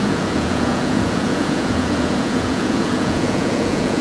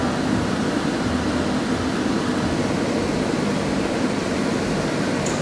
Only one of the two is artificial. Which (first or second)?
first